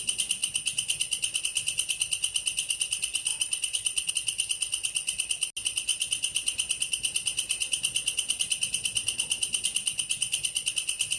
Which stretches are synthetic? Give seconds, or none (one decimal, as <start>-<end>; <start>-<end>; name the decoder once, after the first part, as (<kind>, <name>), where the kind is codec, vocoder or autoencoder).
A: 3.3-4.1 (vocoder, BigVGAN v2)